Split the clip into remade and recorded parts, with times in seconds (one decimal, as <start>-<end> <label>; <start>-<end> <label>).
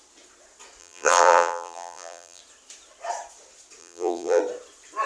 0.0-0.8 recorded; 0.8-2.4 remade; 2.4-3.8 recorded; 3.8-4.4 remade; 4.4-5.1 recorded